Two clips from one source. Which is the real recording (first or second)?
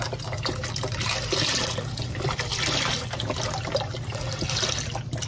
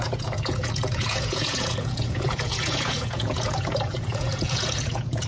first